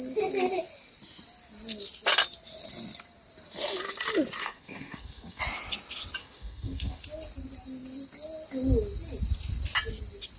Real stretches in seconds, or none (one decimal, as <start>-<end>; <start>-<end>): 0.0-4.4; 5.4-6.2; 7.0-10.4